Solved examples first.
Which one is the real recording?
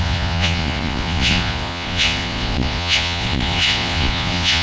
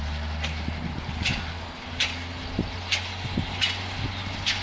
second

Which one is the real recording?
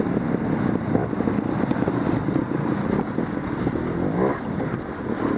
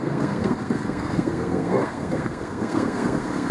first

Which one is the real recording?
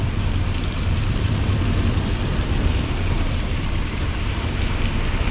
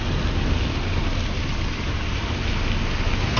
second